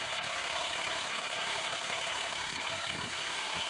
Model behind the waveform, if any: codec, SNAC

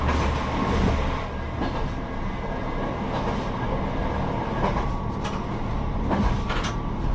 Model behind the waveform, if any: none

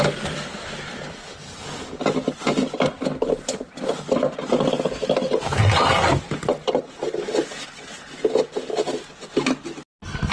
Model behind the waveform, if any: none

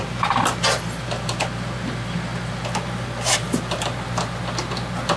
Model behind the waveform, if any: none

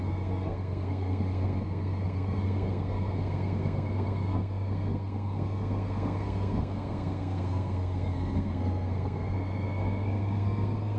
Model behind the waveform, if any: codec, SNAC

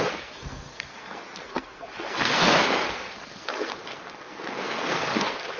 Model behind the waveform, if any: codec, SNAC